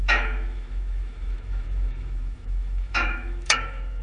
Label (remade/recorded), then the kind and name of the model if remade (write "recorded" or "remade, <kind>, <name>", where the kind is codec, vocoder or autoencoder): remade, autoencoder, DAC-VAE